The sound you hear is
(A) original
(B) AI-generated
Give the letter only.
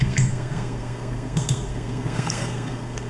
B